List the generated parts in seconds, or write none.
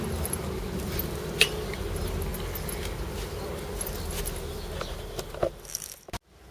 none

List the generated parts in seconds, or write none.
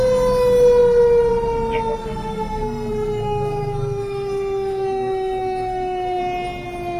2.0-6.2 (codec, SNAC)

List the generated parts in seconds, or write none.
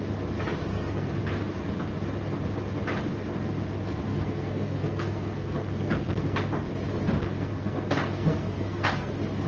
0.7-1.2 (codec, SNAC); 4.1-6.4; 7.2-9.1